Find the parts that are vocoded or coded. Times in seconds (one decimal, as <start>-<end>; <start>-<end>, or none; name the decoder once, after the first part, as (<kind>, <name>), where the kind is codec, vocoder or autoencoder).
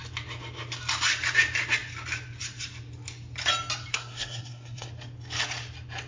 3.9-4.9 (codec, SNAC)